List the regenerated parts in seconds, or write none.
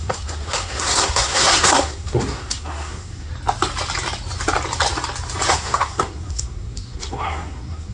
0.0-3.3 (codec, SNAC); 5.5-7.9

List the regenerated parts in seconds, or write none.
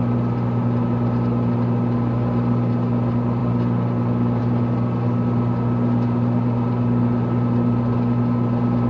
none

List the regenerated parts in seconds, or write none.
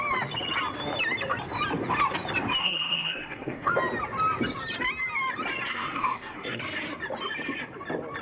2.6-3.7 (codec, SNAC); 5.7-6.6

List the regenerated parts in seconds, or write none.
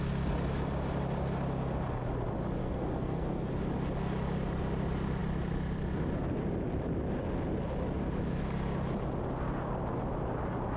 2.6-3.5 (codec, SNAC)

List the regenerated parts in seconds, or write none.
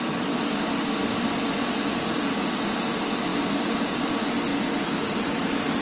none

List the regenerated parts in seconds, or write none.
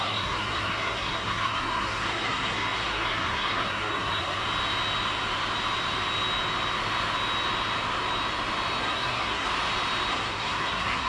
0.0-4.4 (codec, SNAC); 8.8-9.5; 10.1-11.1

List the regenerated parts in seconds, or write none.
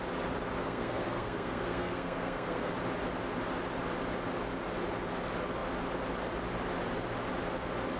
0.6-2.7 (codec, SNAC)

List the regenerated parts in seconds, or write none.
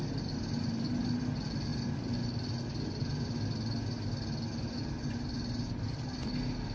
none